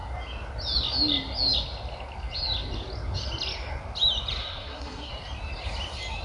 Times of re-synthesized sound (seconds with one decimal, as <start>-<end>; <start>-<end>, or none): 4.4-5.1